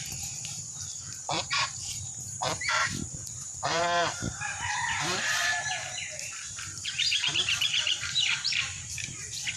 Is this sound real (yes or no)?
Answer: no